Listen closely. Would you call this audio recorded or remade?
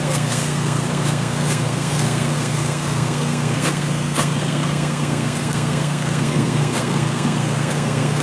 remade